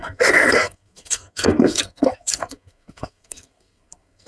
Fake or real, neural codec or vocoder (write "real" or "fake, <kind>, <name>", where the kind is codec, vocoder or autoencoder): fake, codec, SNAC